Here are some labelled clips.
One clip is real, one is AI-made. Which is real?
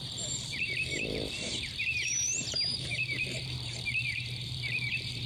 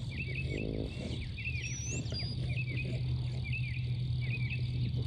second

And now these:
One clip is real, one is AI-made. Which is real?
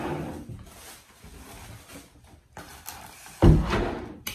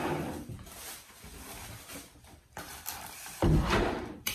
first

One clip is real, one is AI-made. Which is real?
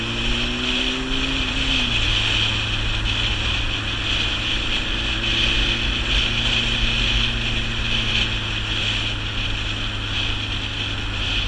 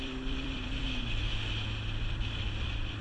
first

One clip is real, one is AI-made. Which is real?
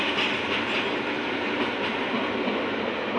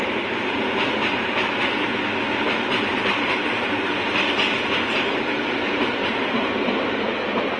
first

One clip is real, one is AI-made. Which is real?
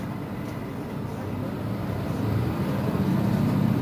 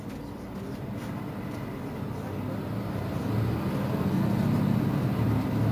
second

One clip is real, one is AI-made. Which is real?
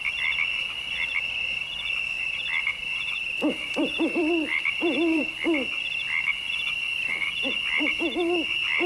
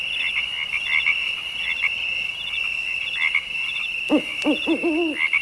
second